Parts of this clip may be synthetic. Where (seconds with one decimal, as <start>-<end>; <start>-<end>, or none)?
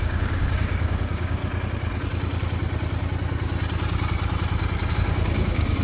0.0-1.4; 4.9-5.8